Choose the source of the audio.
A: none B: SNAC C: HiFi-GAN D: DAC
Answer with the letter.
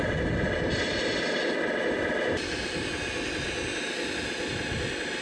A